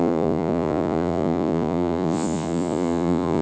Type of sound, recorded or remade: remade